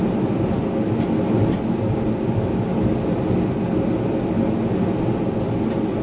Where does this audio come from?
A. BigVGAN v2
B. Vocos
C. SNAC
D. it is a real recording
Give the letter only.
D